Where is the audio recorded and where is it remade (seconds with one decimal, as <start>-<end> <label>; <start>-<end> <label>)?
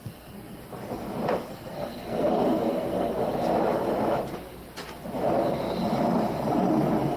0.0-0.6 remade; 0.6-1.5 recorded; 1.5-3.2 remade; 3.2-7.2 recorded